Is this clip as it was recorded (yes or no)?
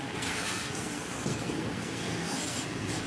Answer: no